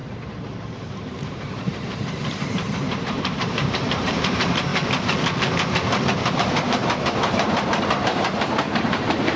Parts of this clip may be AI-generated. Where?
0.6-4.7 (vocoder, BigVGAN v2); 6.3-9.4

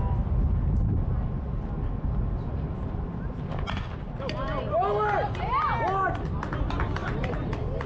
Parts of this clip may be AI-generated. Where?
none

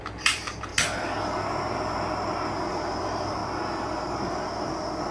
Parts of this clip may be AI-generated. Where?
0.0-0.7 (vocoder, BigVGAN v2); 2.7-3.4

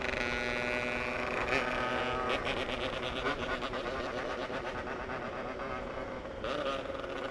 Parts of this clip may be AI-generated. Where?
2.4-6.8 (vocoder, BigVGAN v2)

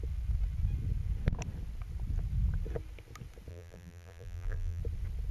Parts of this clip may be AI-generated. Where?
3.5-4.8 (vocoder, BigVGAN v2)

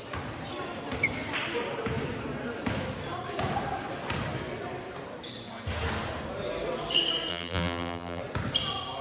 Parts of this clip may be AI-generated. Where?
7.3-8.2 (vocoder, BigVGAN v2)

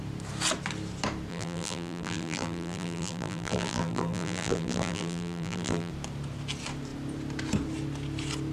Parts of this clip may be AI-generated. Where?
1.3-5.9 (vocoder, BigVGAN v2)

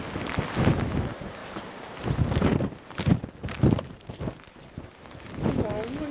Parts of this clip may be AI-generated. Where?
1.4-5.1 (vocoder, BigVGAN v2)